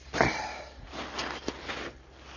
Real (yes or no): yes